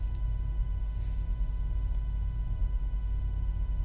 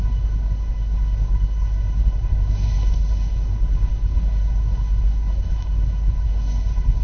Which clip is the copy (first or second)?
second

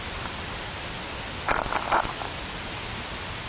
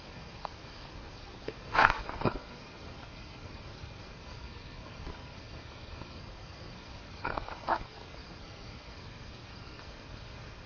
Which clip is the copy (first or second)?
second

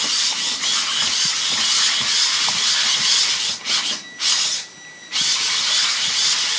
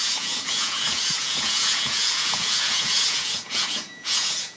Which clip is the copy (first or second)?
second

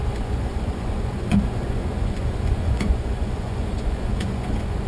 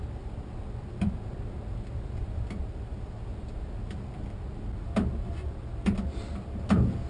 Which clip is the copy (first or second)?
first